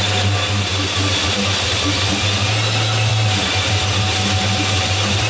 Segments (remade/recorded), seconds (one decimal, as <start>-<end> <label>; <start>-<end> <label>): 0.0-5.3 recorded